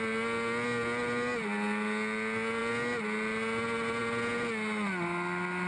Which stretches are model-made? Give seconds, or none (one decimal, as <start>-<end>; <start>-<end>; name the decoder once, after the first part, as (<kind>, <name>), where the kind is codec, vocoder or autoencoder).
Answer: none